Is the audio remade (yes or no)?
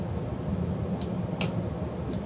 no